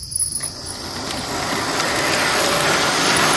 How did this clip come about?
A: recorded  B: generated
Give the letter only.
A